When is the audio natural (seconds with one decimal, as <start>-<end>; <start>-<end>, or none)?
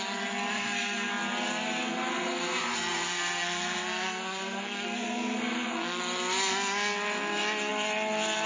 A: 0.0-0.5; 1.1-2.1; 6.0-8.5